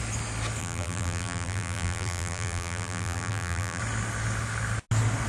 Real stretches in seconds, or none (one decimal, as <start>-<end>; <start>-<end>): 0.0-0.6; 3.8-5.3